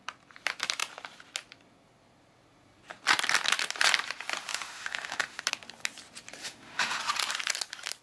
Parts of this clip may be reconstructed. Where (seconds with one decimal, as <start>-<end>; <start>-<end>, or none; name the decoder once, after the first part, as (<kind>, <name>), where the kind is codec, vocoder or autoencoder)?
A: 4.5-5.4 (autoencoder, DAC-VAE); 6.4-7.0